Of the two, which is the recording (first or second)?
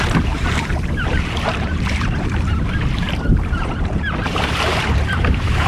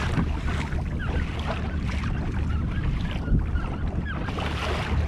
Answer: second